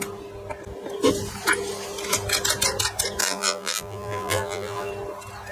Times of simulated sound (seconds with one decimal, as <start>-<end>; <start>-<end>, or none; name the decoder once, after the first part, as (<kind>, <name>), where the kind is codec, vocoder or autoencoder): 3.2-4.9 (vocoder, BigVGAN v2)